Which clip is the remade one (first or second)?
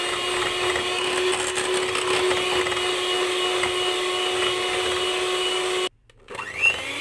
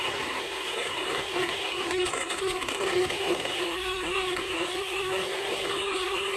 second